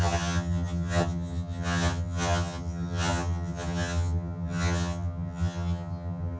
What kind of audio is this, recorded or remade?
remade